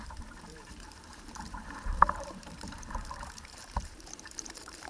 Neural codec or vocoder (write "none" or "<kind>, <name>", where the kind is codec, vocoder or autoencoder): vocoder, BigVGAN v2